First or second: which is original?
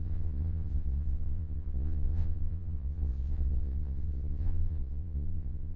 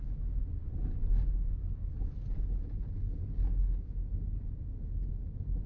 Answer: second